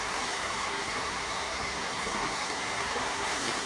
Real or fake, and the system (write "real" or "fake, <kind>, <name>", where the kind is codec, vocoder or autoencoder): fake, codec, SNAC